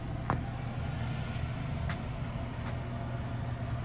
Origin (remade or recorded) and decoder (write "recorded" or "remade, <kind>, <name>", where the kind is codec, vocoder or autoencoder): recorded